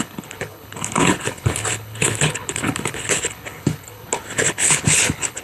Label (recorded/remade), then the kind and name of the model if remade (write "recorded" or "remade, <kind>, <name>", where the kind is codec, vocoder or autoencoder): remade, codec, HILCodec